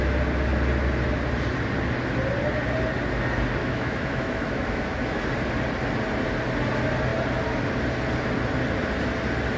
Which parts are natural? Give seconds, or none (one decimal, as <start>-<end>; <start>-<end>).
0.0-3.6; 5.2-9.6